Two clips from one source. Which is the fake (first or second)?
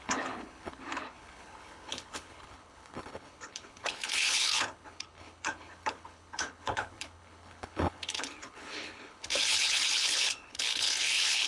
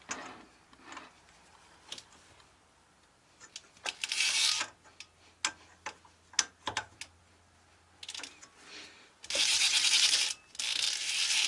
first